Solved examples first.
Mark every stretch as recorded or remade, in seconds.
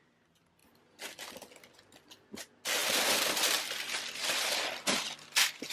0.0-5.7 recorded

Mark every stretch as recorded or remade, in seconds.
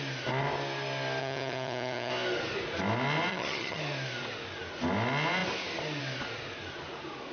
0.0-1.2 recorded; 1.2-2.1 remade; 2.1-3.3 recorded; 3.3-3.8 remade; 3.8-7.3 recorded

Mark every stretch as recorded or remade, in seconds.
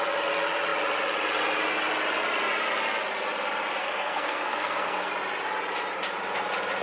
0.0-3.8 recorded; 3.8-5.1 remade; 5.1-6.8 recorded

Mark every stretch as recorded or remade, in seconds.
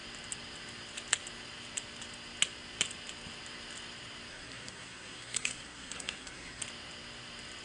0.0-4.3 recorded; 4.3-6.6 remade; 6.6-7.6 recorded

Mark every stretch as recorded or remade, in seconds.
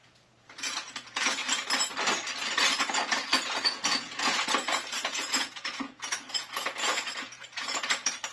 0.0-1.4 remade; 1.4-2.8 recorded; 2.8-8.3 remade